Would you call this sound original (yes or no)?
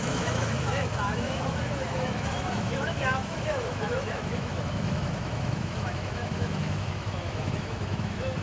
no